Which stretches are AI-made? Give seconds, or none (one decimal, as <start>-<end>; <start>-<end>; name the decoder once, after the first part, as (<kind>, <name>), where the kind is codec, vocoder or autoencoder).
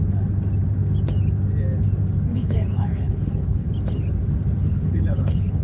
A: 2.3-3.7 (codec, HILCodec); 4.6-5.6